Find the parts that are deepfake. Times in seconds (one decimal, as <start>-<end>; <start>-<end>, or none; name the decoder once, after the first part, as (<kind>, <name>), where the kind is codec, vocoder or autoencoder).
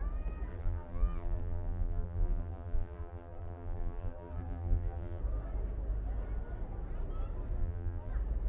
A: 0.5-5.2 (vocoder, BigVGAN v2); 7.6-8.1